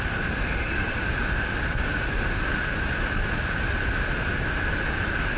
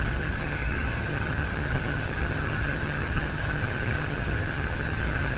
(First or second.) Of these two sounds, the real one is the first